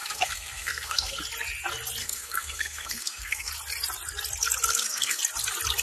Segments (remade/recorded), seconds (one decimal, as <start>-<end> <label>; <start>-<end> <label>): 0.0-1.2 remade; 1.2-2.0 recorded; 2.0-3.5 remade; 3.5-4.7 recorded; 4.7-5.2 remade; 5.2-5.8 recorded

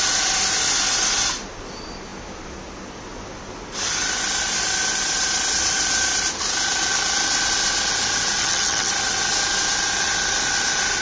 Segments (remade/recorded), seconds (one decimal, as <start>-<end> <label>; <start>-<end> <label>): 0.0-8.4 recorded; 8.4-8.9 remade; 8.9-11.0 recorded

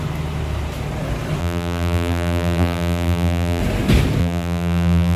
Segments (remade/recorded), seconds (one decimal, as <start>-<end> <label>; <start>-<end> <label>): 0.0-1.4 recorded; 1.4-3.6 remade; 3.6-4.2 recorded; 4.2-5.2 remade

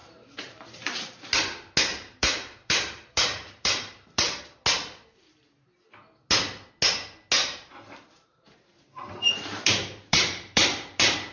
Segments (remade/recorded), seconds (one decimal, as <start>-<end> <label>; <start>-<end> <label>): 0.0-1.3 remade; 1.3-1.9 recorded; 1.9-4.4 remade; 4.4-7.4 recorded; 7.4-11.3 remade

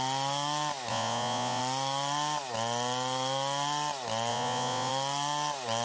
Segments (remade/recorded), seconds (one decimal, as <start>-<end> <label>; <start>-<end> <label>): 0.0-0.9 recorded; 0.9-1.6 remade; 1.6-4.3 recorded; 4.3-4.9 remade; 4.9-5.8 recorded

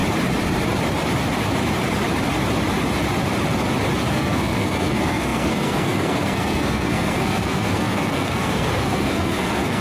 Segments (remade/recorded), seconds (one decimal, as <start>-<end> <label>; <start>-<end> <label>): 0.0-4.1 recorded; 4.1-9.8 remade